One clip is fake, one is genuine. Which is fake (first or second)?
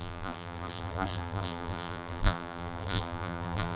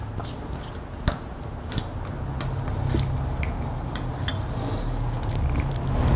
first